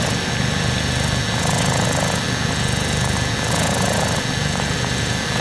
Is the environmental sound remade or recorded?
recorded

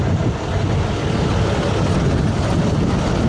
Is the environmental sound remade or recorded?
recorded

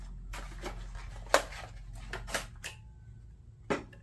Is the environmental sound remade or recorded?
recorded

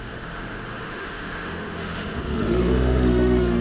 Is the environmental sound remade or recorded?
remade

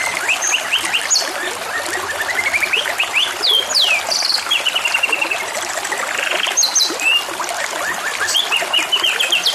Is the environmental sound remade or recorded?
recorded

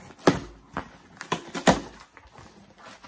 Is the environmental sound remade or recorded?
recorded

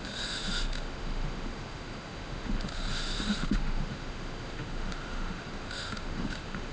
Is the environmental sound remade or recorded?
remade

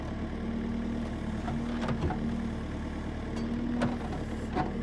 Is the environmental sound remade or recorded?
recorded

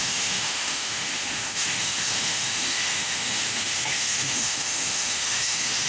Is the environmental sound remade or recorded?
remade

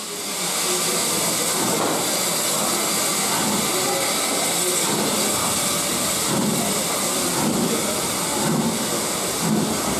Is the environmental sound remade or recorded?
recorded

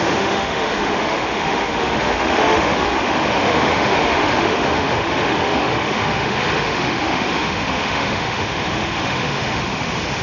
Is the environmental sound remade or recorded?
remade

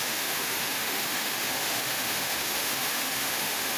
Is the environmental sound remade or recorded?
remade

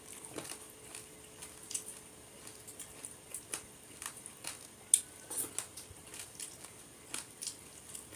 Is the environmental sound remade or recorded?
recorded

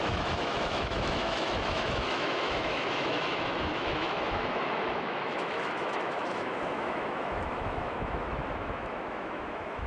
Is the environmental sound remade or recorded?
remade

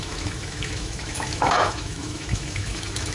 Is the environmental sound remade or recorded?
remade